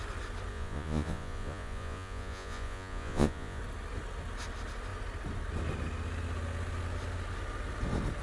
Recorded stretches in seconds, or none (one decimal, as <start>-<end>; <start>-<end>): 0.0-0.5; 3.6-8.2